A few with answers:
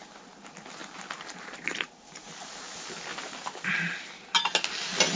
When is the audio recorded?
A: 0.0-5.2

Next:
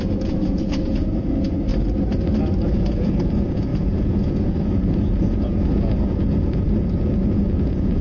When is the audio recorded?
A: 1.7-2.7

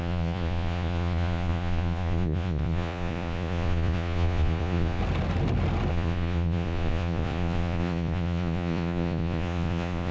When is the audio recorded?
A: 5.0-5.9